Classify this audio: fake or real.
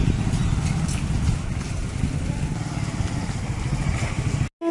real